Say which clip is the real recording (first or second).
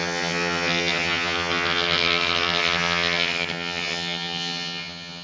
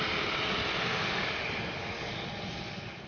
second